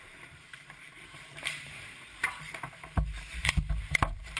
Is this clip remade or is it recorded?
remade